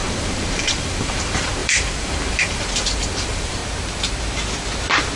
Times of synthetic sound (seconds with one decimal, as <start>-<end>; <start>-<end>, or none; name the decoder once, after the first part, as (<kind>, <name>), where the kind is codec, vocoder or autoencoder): 0.0-3.6 (vocoder, BigVGAN v2)